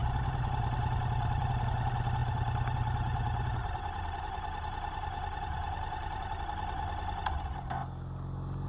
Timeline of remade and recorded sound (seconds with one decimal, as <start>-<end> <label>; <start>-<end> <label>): 0.0-1.5 remade; 1.5-2.2 recorded; 2.2-6.4 remade; 6.4-8.7 recorded

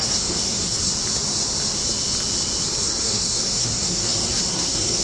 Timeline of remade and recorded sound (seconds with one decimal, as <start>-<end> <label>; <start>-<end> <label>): 0.0-0.9 remade; 0.9-2.8 recorded; 2.8-5.0 remade

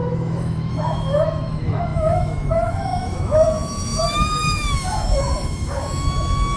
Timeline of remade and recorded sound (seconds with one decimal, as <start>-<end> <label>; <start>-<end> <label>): 0.0-6.6 remade

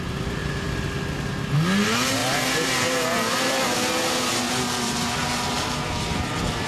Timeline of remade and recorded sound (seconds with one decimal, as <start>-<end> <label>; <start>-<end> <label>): 0.0-6.7 recorded

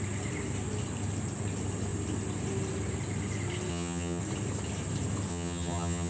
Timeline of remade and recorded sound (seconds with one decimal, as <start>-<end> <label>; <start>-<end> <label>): 0.0-3.7 recorded; 3.7-4.2 remade; 4.2-5.3 recorded; 5.3-6.1 remade

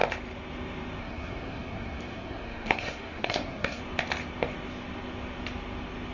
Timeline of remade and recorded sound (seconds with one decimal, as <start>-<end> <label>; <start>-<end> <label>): 0.0-1.0 recorded; 1.0-3.8 remade; 3.8-6.1 recorded

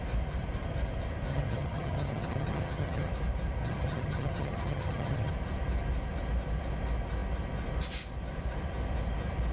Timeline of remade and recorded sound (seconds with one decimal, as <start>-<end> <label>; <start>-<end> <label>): 0.0-1.3 recorded; 1.3-3.1 remade; 3.1-3.6 recorded; 3.6-5.3 remade; 5.3-9.5 recorded

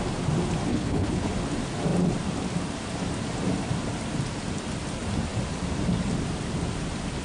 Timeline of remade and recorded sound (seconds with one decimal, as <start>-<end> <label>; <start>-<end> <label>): 0.0-0.7 recorded; 0.7-1.3 remade; 1.3-7.2 recorded